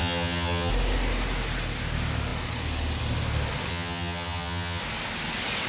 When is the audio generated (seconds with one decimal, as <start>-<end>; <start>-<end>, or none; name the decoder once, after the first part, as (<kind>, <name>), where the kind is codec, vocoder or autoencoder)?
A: 0.0-0.7 (vocoder, HiFi-GAN); 3.7-4.8